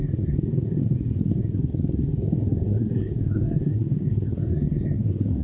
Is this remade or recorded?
remade